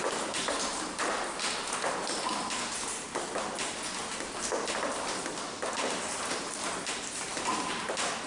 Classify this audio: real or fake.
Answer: real